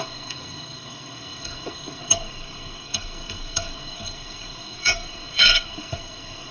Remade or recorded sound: remade